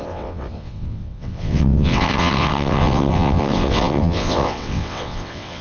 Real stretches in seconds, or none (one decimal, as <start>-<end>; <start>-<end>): none